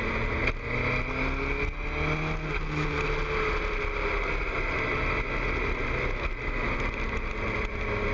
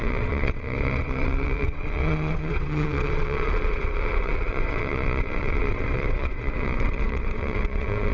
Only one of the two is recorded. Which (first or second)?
first